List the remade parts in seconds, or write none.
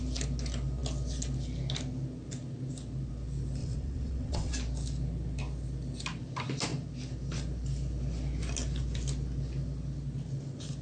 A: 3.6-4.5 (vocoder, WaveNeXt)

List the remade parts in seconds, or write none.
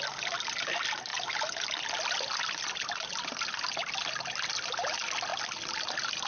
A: none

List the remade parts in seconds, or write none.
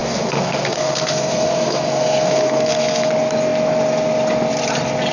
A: 0.0-3.1 (codec, SNAC)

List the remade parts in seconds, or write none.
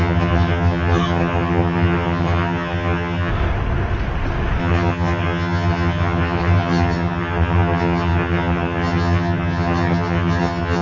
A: 0.0-3.3 (vocoder, HiFi-GAN); 4.6-10.8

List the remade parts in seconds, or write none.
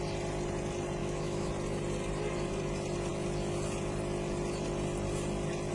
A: 1.0-1.5 (autoencoder, DAC-VAE)